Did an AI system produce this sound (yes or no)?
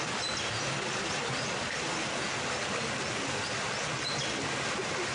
no